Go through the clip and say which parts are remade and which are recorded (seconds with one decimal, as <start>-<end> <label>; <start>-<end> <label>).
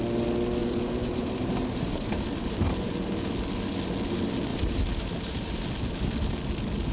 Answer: 0.0-0.6 recorded; 0.6-3.3 remade; 3.3-4.5 recorded; 4.5-5.5 remade; 5.5-6.9 recorded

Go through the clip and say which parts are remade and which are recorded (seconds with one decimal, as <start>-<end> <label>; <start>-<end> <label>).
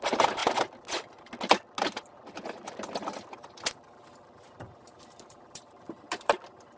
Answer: 0.0-0.4 remade; 0.4-4.5 recorded; 4.5-6.8 remade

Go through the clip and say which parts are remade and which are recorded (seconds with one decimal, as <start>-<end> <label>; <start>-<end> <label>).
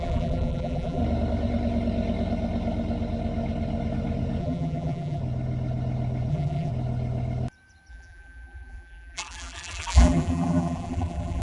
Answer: 0.0-1.0 remade; 1.0-4.4 recorded; 4.4-5.2 remade; 5.2-6.3 recorded; 6.3-6.7 remade; 6.7-7.9 recorded; 7.9-11.4 remade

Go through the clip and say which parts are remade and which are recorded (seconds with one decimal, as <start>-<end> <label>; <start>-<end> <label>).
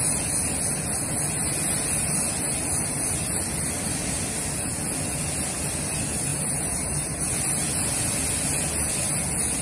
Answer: 0.0-6.3 recorded; 6.3-7.2 remade; 7.2-9.6 recorded